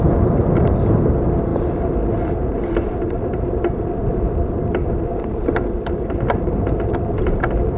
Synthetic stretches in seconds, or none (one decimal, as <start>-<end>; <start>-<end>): 0.0-1.5; 2.2-7.8